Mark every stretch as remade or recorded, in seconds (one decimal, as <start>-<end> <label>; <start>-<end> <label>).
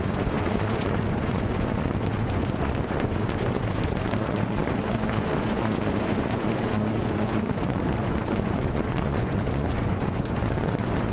0.0-11.1 remade